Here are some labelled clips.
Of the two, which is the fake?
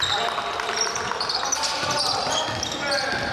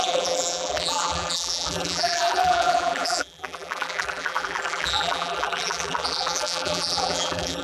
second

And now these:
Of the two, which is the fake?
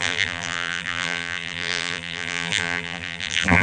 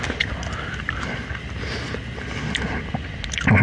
first